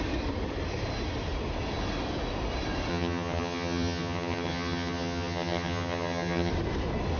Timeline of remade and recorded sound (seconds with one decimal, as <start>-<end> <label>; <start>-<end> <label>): 0.0-2.9 recorded; 2.9-6.5 remade; 6.5-7.2 recorded